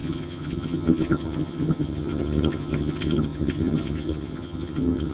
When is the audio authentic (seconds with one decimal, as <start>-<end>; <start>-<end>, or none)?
none